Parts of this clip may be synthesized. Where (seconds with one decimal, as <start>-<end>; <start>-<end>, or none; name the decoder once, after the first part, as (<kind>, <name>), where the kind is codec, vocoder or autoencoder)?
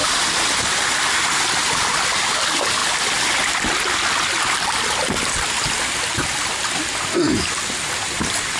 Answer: none